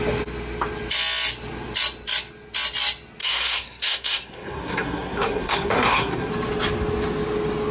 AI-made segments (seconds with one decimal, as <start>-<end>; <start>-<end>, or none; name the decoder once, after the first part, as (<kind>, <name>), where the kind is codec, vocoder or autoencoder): 3.2-6.3 (codec, SNAC)